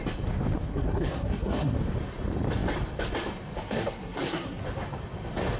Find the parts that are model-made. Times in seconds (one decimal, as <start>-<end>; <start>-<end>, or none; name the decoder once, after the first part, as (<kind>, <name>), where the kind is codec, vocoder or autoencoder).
0.7-1.8 (codec, SNAC); 3.6-4.6